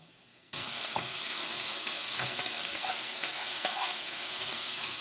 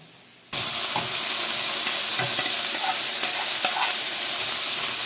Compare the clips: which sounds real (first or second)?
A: second